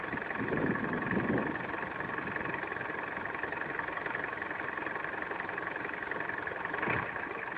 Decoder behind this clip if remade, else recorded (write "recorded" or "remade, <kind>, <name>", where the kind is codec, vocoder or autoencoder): recorded